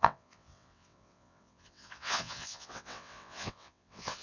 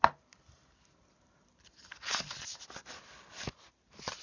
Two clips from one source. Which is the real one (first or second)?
second